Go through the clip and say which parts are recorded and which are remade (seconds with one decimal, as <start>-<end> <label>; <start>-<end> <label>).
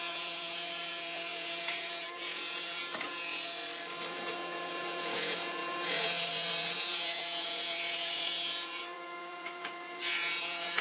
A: 0.0-3.6 remade; 3.6-4.1 recorded; 4.1-10.8 remade